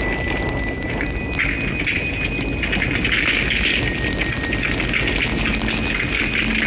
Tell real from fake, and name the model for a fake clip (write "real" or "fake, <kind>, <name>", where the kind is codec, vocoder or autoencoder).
real